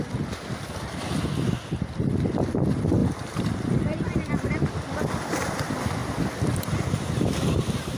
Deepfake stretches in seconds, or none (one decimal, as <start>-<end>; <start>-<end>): 3.0-4.2; 6.0-7.6